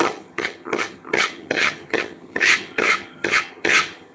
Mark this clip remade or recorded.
remade